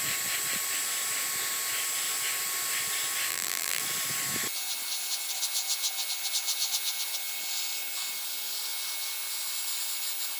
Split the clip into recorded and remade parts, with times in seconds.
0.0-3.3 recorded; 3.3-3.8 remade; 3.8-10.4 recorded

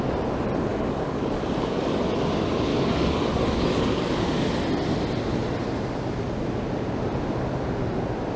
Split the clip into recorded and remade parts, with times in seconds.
0.0-0.7 recorded; 0.7-2.0 remade; 2.0-2.7 recorded; 2.7-4.5 remade; 4.5-8.4 recorded

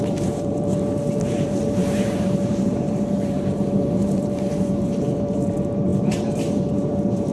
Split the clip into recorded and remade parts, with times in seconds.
0.0-7.3 remade

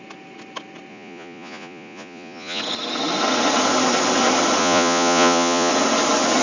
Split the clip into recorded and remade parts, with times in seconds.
0.0-0.9 recorded; 0.9-2.6 remade; 2.6-4.6 recorded; 4.6-5.7 remade; 5.7-6.4 recorded

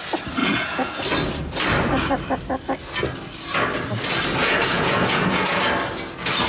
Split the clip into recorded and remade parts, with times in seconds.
0.0-0.4 recorded; 0.4-1.0 remade; 1.0-4.4 recorded; 4.4-5.6 remade; 5.6-6.5 recorded